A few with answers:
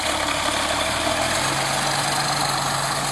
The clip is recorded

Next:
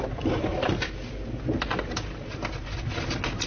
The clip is recorded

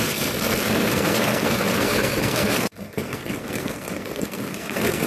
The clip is remade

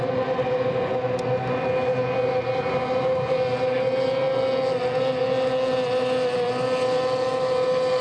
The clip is recorded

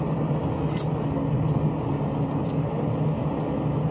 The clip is recorded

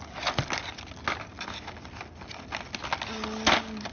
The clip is recorded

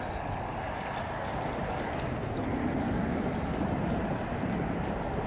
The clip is recorded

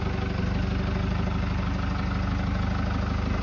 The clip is recorded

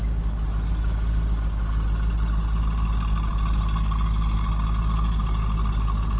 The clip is recorded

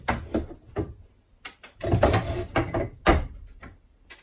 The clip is recorded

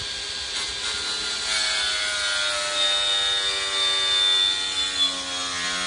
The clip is recorded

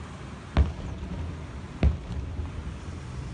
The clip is recorded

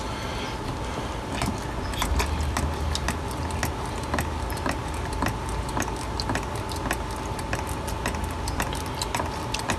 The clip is recorded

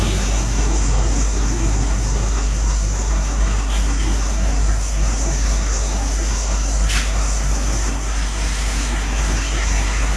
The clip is remade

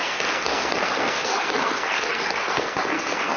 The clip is remade